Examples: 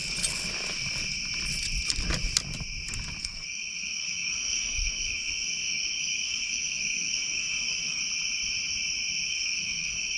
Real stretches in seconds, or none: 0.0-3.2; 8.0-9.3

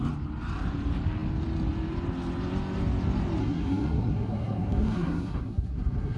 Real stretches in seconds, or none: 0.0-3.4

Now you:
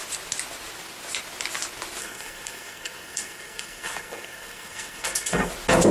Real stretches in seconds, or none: 0.0-2.0; 5.5-5.9

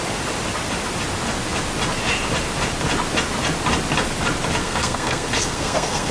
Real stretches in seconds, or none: 0.0-4.6

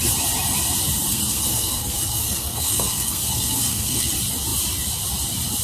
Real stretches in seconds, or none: 0.0-1.1; 4.1-5.6

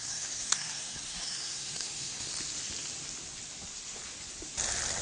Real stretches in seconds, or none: 2.3-5.0